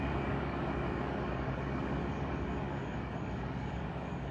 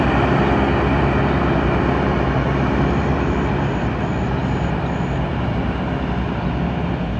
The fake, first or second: first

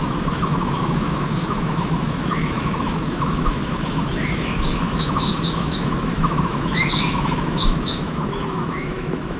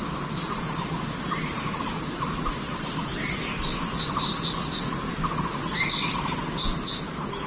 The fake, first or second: first